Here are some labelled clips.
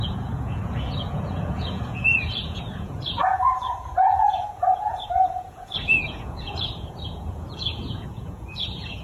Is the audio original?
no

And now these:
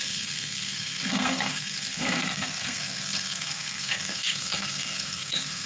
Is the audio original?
no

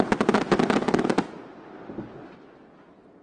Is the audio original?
yes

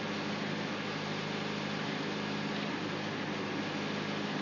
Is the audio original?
yes